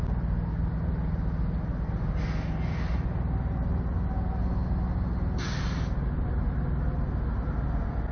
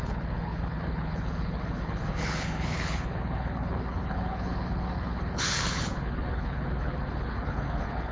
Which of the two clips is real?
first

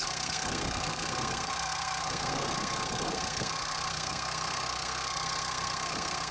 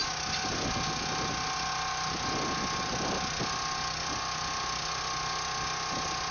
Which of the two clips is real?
second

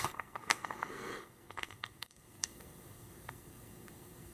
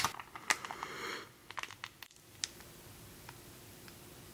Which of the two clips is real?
second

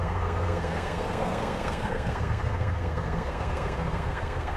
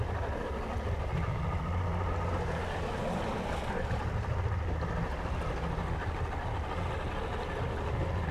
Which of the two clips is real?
second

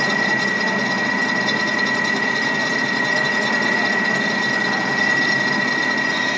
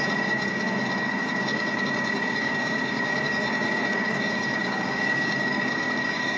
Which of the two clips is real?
first